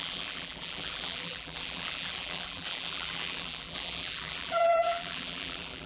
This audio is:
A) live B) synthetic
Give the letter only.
B